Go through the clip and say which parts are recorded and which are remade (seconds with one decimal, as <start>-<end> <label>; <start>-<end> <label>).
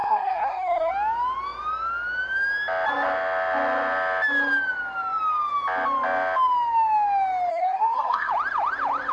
0.0-0.9 remade; 0.9-7.5 recorded; 7.5-8.3 remade; 8.3-9.1 recorded